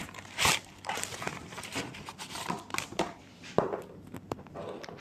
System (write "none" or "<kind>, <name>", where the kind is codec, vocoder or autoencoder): none